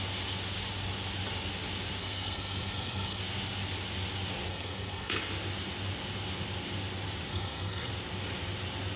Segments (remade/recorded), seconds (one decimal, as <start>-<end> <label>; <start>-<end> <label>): 0.0-2.0 recorded; 2.0-3.2 remade; 3.2-4.5 recorded; 4.5-5.3 remade; 5.3-7.3 recorded; 7.3-7.9 remade; 7.9-9.0 recorded